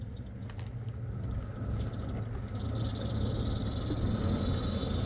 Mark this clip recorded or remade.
recorded